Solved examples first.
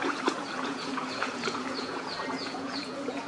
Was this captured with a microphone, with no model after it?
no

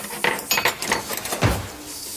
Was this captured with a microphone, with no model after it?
yes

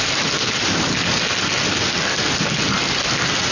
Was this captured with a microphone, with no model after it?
yes